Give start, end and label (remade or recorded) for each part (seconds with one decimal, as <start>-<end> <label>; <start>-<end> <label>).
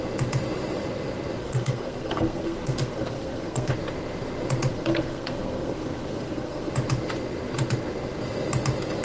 0.0-1.4 recorded; 1.4-3.7 remade; 3.7-4.7 recorded; 4.7-6.7 remade; 6.7-9.0 recorded